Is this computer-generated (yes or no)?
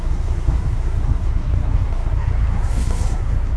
yes